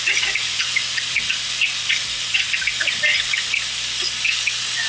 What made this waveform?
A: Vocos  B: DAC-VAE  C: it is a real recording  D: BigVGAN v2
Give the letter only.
C